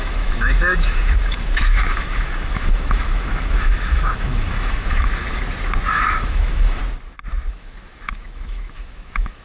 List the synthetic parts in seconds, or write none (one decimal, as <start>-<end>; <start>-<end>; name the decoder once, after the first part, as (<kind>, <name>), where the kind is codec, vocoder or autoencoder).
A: 0.0-5.2 (autoencoder, DAC-VAE); 5.9-6.8; 7.5-9.4